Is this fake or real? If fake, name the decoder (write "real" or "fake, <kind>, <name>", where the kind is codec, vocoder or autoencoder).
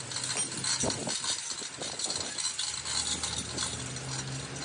real